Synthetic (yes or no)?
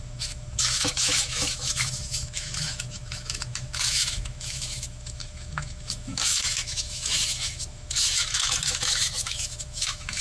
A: yes